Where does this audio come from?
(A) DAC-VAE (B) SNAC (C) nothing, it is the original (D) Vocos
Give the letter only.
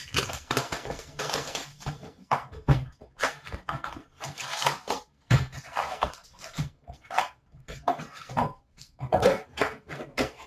B